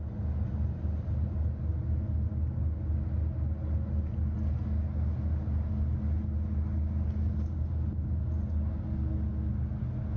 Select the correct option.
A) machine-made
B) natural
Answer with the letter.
B